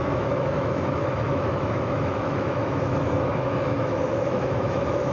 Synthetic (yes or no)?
yes